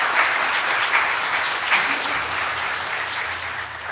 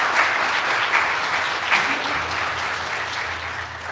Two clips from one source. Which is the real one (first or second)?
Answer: second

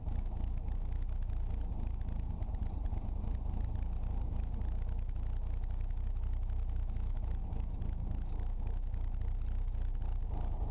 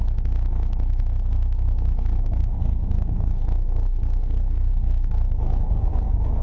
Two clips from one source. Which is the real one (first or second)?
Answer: first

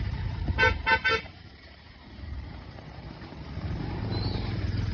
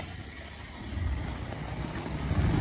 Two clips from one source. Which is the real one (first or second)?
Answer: second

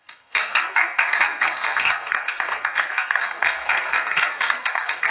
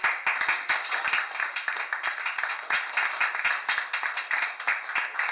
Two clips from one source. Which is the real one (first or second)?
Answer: second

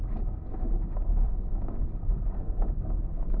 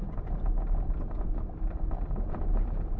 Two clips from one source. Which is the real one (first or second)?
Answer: second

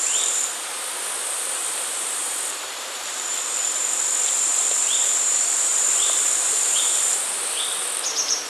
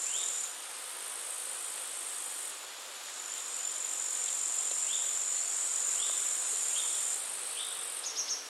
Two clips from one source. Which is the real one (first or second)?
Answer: second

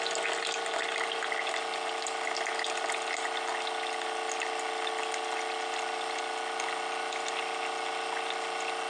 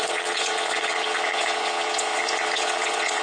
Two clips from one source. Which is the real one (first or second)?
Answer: first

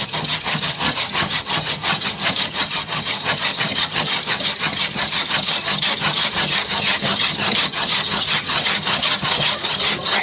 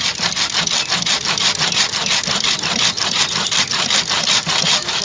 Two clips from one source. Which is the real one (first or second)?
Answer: second